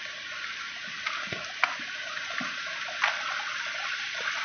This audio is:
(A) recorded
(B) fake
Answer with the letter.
A